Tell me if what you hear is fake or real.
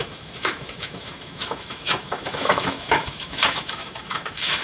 fake